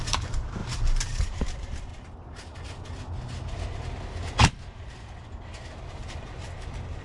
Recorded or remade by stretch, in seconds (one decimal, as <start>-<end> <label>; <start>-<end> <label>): 0.0-1.9 remade; 1.9-5.9 recorded; 5.9-7.0 remade